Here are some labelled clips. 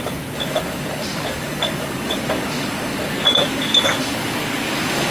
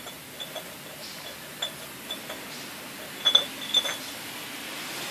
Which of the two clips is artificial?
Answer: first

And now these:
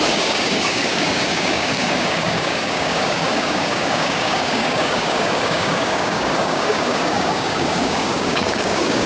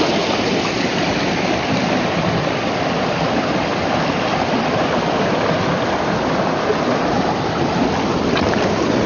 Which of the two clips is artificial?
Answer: first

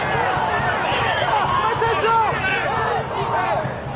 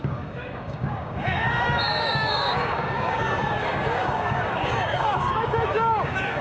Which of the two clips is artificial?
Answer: second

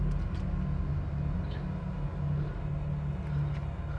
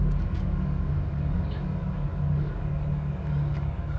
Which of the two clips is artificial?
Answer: second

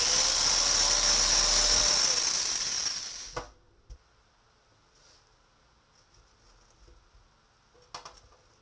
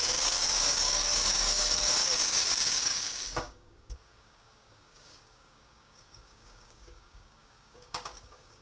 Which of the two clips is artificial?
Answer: second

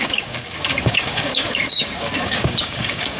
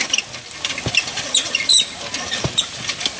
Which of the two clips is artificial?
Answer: first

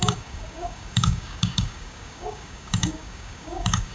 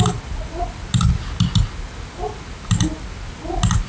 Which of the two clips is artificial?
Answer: first